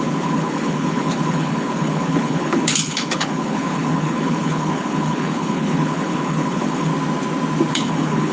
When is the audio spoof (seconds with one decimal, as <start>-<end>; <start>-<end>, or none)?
0.0-6.9; 7.7-8.3